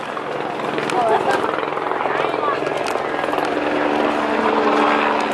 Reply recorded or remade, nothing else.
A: recorded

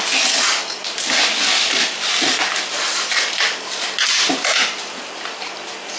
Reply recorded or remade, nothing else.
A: recorded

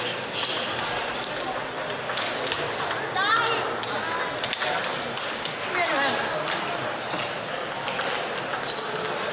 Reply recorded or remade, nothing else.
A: recorded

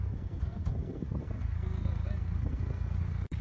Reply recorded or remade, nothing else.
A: remade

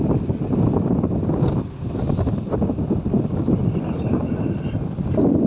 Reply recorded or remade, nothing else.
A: remade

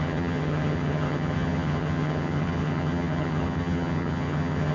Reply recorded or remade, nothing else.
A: remade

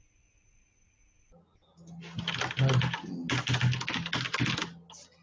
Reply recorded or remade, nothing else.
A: recorded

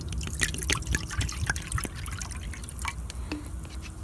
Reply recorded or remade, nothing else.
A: recorded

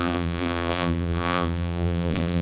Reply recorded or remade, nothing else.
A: remade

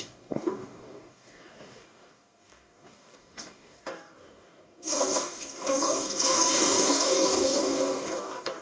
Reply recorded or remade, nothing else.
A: remade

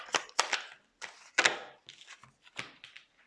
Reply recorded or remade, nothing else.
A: recorded